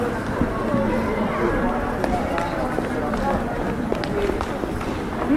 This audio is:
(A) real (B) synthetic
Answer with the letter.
A